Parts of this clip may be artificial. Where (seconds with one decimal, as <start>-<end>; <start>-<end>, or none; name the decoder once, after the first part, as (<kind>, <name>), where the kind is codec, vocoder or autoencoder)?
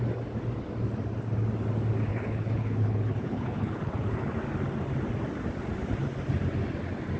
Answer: 2.1-4.3 (codec, HILCodec)